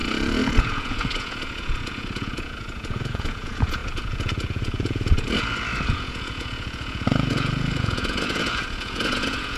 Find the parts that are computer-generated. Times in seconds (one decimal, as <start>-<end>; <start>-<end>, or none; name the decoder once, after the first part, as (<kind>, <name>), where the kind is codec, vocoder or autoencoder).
0.0-9.6 (vocoder, Vocos)